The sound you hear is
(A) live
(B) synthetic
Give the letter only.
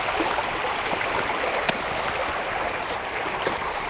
A